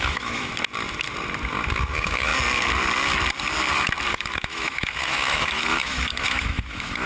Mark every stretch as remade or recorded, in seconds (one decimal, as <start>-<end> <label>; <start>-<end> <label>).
0.0-0.5 remade; 0.5-1.7 recorded; 1.7-2.3 remade; 2.3-4.1 recorded; 4.1-7.1 remade